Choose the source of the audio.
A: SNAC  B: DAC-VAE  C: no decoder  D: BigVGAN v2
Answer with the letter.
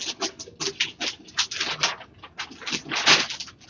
C